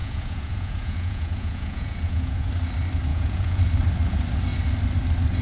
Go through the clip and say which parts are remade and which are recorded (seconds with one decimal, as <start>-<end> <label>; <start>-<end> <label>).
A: 0.0-2.5 remade; 2.5-3.1 recorded; 3.1-3.6 remade; 3.6-5.4 recorded